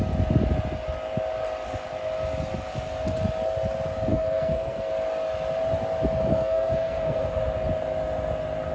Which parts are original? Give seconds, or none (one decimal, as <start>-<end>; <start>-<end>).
0.0-4.1; 4.9-6.3; 7.3-8.7

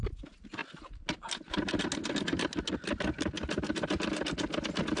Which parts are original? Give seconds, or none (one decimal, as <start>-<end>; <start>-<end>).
0.0-5.0

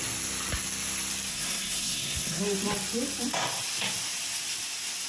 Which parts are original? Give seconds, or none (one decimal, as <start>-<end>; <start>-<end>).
0.0-1.3; 2.4-5.1